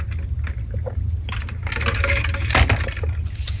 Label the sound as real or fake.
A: real